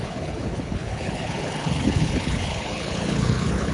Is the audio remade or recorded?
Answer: remade